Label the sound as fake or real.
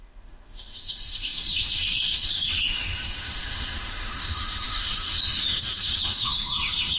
fake